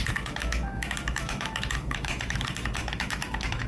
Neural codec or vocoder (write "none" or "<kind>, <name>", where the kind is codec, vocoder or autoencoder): autoencoder, DAC-VAE